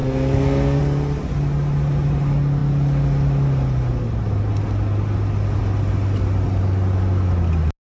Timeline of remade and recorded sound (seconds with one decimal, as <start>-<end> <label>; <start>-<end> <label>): 0.0-0.8 remade; 0.8-8.0 recorded